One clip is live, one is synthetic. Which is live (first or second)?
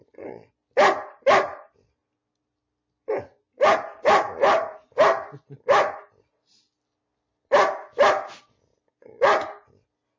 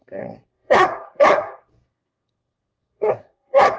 first